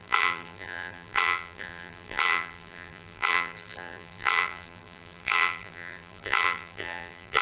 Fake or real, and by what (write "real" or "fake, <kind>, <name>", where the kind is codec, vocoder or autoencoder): fake, vocoder, BigVGAN v2